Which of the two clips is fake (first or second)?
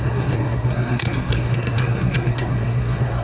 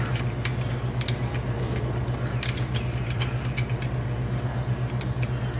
first